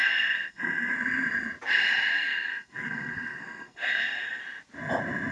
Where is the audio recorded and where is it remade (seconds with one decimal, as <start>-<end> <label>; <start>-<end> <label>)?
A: 0.0-0.9 remade; 0.9-2.1 recorded; 2.1-4.4 remade; 4.4-5.3 recorded